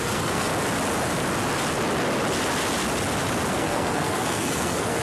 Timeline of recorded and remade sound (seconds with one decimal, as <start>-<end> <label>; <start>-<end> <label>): 0.0-0.5 remade; 0.5-3.5 recorded; 3.5-5.0 remade